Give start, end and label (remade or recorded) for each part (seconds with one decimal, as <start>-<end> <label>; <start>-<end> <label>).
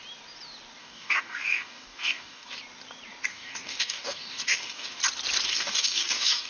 0.0-0.8 recorded; 0.8-2.5 remade; 2.5-3.3 recorded; 3.3-5.0 remade; 5.0-5.5 recorded; 5.5-6.5 remade